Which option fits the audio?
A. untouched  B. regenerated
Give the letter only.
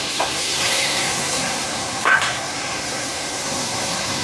B